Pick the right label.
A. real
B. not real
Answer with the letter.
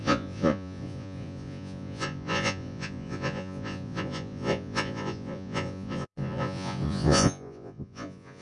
B